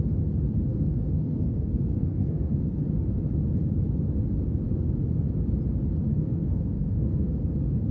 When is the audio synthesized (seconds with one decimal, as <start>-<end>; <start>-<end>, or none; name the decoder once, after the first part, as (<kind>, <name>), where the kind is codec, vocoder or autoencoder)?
0.7-2.8 (codec, SNAC); 6.1-7.5